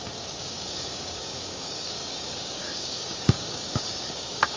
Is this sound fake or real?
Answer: fake